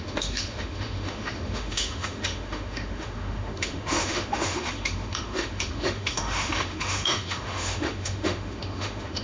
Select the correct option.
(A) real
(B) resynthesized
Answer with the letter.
B